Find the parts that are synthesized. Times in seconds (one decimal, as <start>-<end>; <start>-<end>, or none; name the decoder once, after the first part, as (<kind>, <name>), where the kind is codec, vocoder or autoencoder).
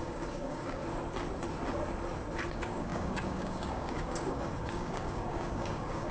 0.0-0.8 (codec, DAC); 2.5-6.1